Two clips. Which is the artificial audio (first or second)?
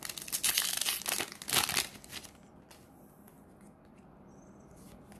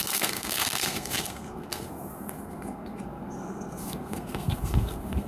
second